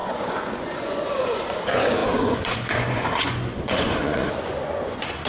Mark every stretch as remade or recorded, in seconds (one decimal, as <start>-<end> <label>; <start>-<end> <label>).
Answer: 0.0-5.3 remade